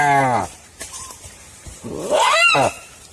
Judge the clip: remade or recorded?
recorded